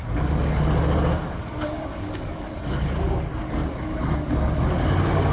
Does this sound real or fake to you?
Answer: fake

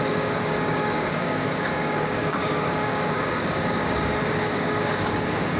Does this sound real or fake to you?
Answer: fake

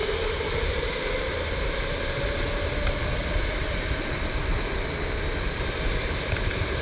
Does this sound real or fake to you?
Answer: real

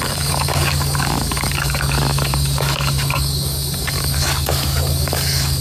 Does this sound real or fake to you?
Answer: fake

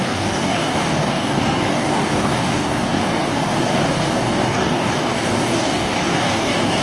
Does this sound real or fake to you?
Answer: fake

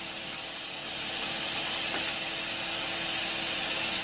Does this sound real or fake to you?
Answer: real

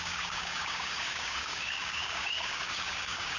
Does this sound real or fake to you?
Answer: fake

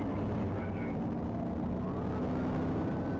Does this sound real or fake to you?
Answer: real